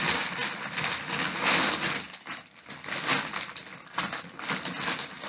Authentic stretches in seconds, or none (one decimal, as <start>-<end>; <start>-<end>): 0.0-5.3